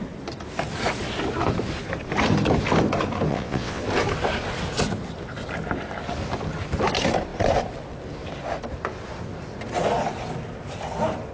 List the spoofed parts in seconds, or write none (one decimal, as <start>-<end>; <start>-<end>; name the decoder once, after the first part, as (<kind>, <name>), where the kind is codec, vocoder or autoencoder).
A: 3.3-3.8 (vocoder, WaveNeXt)